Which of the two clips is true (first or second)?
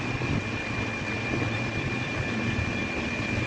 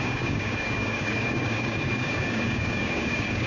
first